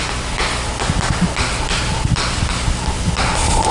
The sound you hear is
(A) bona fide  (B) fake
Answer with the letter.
A